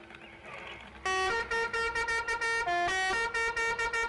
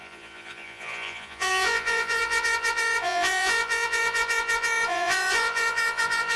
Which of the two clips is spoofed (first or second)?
second